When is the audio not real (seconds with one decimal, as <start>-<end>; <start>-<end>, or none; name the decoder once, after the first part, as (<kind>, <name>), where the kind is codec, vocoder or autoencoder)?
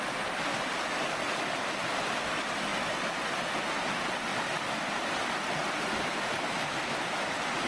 none